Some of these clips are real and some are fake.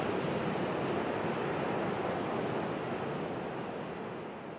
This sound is real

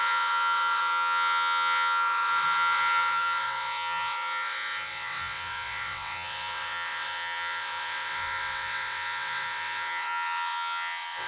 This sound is fake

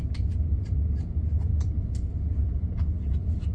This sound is real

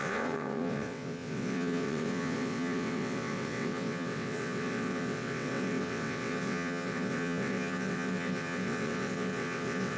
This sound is fake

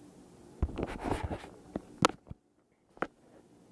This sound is real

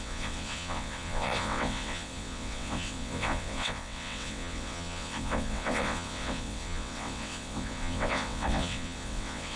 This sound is fake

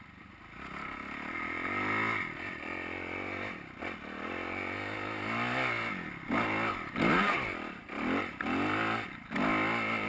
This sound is real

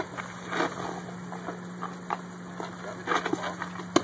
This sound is real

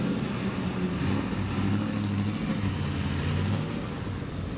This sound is real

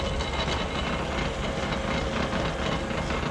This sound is real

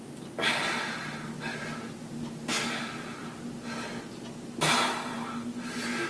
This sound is real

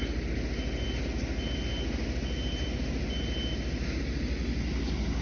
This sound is real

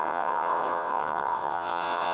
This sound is fake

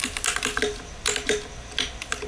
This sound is real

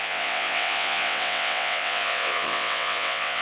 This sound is fake